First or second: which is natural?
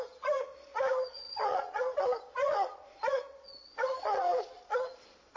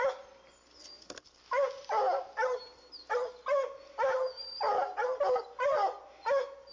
second